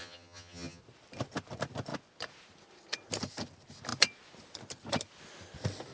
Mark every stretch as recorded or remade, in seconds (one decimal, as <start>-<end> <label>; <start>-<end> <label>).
0.0-0.8 remade; 0.8-5.9 recorded